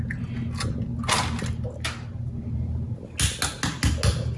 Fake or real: real